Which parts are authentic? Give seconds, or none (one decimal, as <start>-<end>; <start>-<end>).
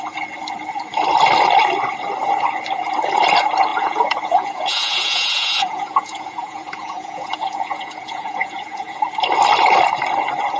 0.0-3.7; 9.0-10.6